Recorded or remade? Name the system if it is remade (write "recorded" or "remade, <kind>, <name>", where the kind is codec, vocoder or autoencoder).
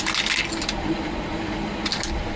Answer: recorded